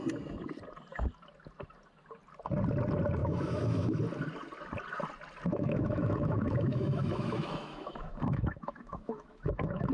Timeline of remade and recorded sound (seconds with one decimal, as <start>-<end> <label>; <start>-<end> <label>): 0.0-3.2 recorded; 3.2-4.0 remade; 4.0-5.5 recorded; 5.5-9.9 remade